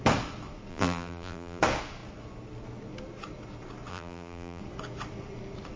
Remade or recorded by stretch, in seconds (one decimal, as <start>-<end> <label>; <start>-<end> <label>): 0.0-0.7 recorded; 0.7-1.6 remade; 1.6-3.9 recorded; 3.9-4.6 remade; 4.6-5.8 recorded